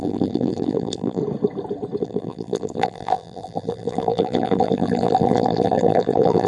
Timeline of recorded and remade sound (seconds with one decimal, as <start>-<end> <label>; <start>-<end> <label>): 0.0-1.2 remade; 1.2-2.0 recorded; 2.0-6.5 remade